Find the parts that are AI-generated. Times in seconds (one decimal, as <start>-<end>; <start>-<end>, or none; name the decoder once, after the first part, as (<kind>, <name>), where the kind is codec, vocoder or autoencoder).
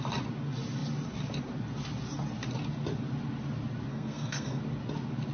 3.9-4.6 (codec, SNAC)